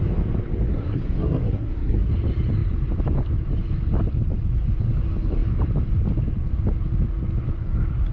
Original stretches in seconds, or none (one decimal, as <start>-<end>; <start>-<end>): 0.0-0.7; 2.1-8.1

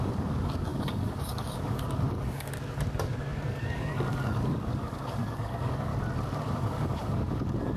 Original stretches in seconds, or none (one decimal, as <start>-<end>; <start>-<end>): 5.9-6.4

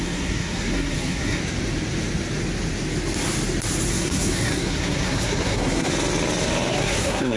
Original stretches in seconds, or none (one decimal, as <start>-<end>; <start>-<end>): 1.4-3.9; 5.9-6.7

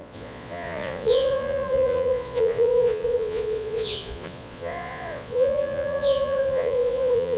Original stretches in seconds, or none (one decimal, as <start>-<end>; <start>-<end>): none

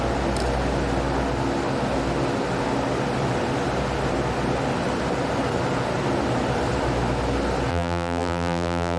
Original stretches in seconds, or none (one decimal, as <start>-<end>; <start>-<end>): 0.0-7.7

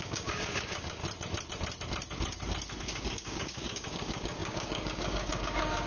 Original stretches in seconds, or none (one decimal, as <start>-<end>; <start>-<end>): 1.0-2.8